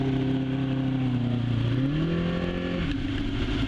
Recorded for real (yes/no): yes